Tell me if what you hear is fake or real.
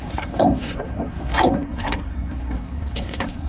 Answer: fake